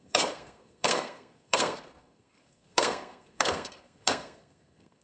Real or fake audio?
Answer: fake